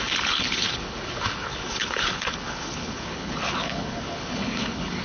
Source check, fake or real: fake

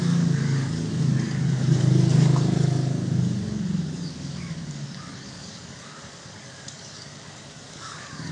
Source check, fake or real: fake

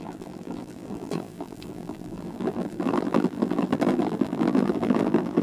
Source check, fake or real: fake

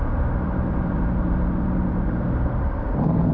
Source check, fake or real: fake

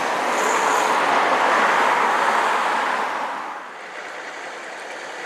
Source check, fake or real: real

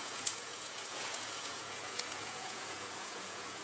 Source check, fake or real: fake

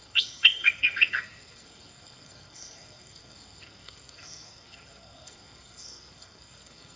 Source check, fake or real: fake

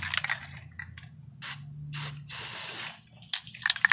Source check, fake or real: real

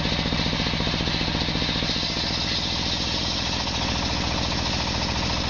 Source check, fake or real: real